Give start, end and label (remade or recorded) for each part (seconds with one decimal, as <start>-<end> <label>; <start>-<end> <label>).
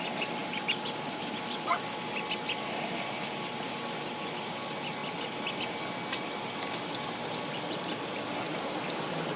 0.0-9.4 recorded